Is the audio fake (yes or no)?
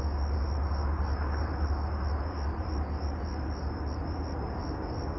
no